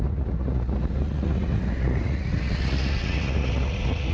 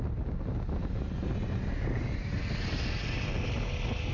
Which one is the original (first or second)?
second